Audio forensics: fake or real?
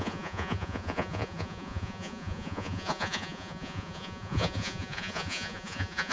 fake